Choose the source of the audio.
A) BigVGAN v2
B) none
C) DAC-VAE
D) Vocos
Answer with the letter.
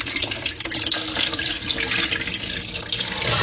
B